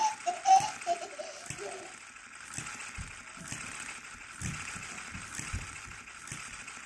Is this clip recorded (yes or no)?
yes